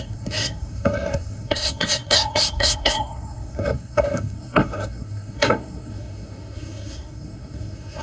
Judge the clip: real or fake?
fake